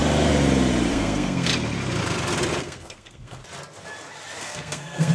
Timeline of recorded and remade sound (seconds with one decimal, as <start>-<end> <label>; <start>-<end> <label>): 0.0-0.9 recorded; 0.9-1.5 remade; 1.5-2.6 recorded; 2.6-3.4 remade; 3.4-4.4 recorded; 4.4-5.1 remade